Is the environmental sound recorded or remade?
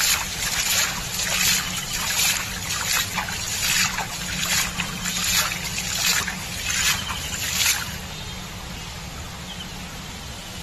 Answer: recorded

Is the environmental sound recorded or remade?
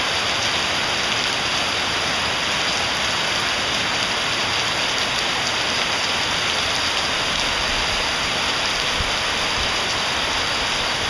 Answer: recorded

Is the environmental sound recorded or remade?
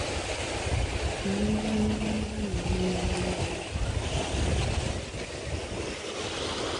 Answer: recorded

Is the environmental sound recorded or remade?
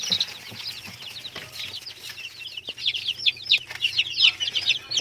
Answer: recorded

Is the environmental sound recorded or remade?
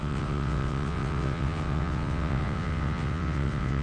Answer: remade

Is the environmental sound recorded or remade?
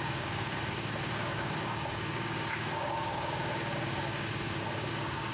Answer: remade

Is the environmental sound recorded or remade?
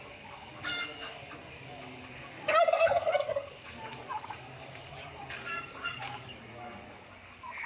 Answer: remade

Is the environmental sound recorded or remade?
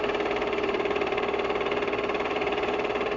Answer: remade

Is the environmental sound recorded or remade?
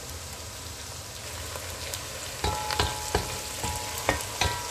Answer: recorded